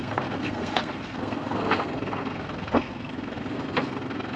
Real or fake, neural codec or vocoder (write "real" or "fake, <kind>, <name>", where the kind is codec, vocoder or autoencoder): fake, codec, SNAC